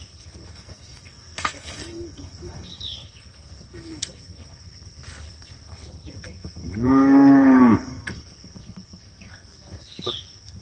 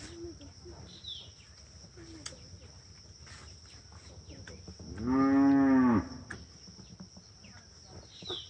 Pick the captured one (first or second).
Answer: second